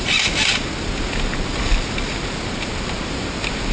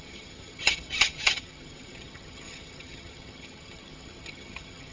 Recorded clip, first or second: first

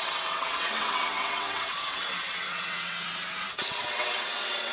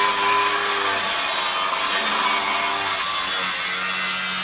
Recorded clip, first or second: second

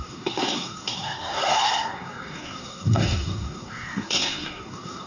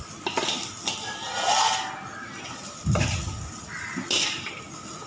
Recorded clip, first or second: second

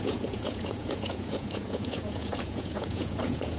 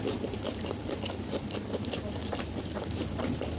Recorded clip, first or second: second